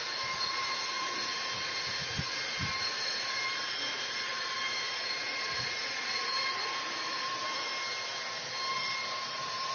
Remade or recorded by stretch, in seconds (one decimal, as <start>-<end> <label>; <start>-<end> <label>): 0.0-7.7 remade; 7.7-8.7 recorded; 8.7-9.7 remade